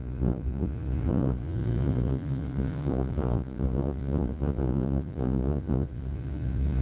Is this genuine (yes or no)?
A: no